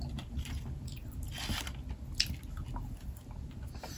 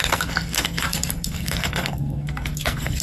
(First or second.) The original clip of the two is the first